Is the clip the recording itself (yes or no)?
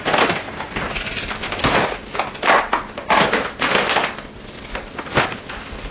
yes